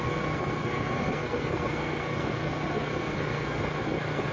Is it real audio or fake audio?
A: fake